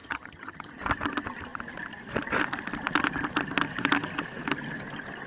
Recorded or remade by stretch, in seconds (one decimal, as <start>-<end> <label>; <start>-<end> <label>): 0.0-0.7 remade; 0.7-5.3 recorded